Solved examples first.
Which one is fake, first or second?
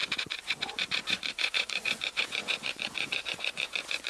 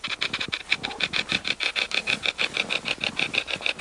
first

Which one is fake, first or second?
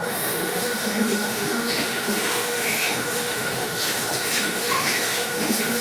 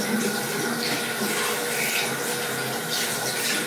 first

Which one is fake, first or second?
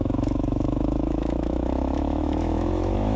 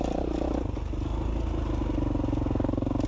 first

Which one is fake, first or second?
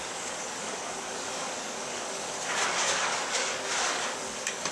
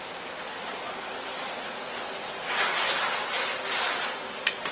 first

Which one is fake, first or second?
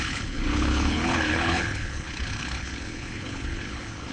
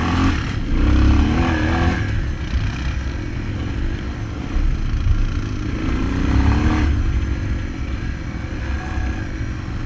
first